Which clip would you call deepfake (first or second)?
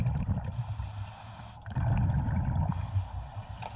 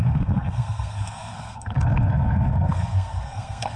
second